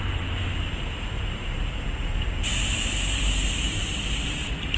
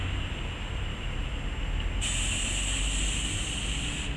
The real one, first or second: second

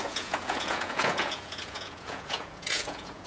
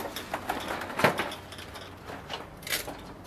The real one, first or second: second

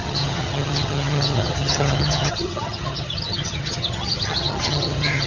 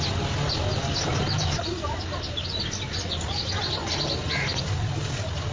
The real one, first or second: second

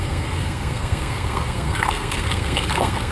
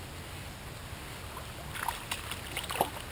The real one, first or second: second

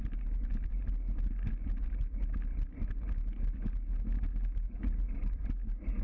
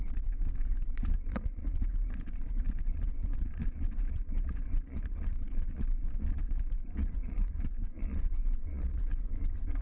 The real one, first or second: first